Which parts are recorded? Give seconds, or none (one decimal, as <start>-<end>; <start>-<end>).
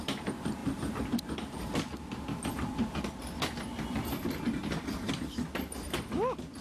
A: 0.0-6.6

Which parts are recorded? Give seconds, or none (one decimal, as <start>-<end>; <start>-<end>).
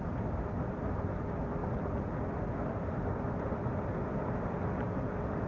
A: 0.0-5.5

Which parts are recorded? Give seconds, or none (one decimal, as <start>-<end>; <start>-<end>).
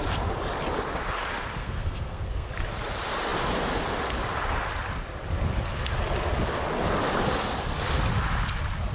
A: 0.0-1.6; 2.5-8.9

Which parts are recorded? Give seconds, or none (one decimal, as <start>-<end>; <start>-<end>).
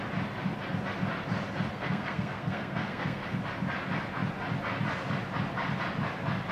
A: 0.0-1.7; 3.4-6.5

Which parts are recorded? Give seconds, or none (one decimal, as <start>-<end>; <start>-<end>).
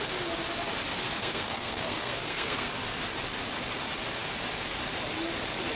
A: 0.0-1.2; 2.7-5.8